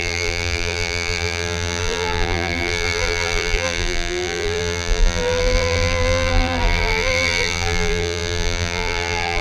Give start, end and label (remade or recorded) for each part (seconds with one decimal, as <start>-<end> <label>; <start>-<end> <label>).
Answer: 0.0-9.4 remade